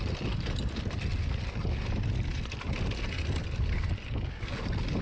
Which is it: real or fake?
real